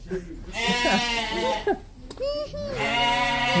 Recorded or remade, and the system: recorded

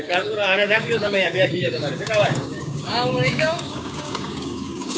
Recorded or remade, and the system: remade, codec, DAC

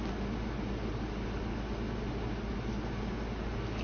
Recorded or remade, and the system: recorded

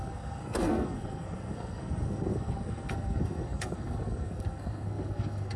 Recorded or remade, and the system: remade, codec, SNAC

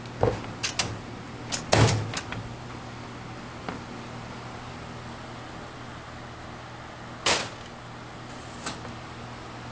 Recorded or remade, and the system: recorded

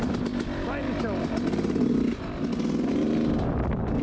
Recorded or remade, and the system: recorded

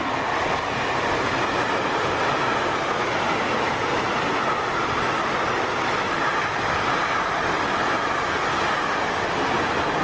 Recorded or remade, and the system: recorded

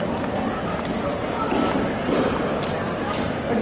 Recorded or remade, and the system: recorded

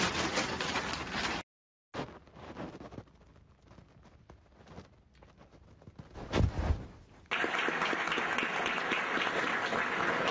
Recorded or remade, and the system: recorded